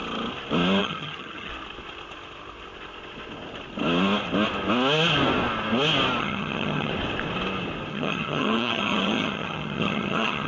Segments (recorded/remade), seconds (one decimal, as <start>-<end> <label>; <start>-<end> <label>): 0.0-0.8 recorded; 0.8-1.5 remade; 1.5-6.2 recorded; 6.2-6.9 remade; 6.9-7.9 recorded; 7.9-10.5 remade